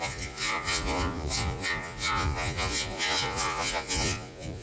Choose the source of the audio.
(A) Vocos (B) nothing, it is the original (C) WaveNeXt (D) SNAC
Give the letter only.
A